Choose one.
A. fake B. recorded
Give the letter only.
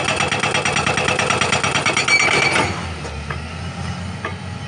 B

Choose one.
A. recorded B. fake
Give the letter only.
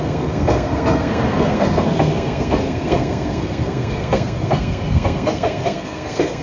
B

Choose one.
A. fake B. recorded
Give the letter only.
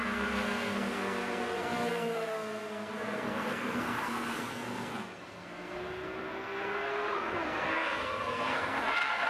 A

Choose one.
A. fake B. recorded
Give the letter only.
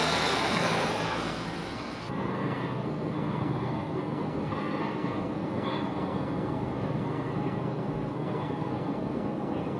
A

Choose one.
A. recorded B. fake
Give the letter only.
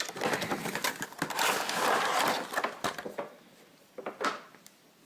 A